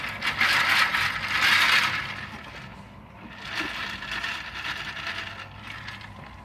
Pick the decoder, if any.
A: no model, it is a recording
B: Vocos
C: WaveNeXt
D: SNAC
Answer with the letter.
A